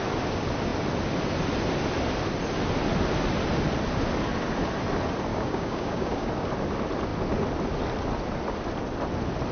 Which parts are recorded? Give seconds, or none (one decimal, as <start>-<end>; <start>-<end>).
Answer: 0.0-5.3; 6.3-9.5